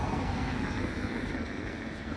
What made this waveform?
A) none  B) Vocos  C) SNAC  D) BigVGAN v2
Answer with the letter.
C